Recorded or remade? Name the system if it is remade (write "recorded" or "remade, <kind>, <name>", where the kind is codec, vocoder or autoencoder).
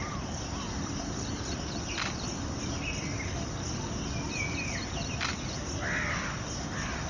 recorded